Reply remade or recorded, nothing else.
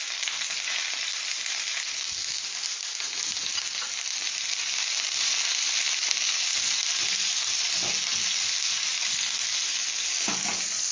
recorded